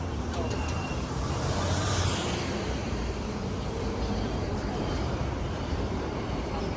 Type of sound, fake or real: fake